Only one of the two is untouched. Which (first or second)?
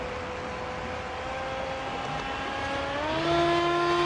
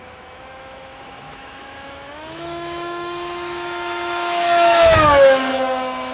first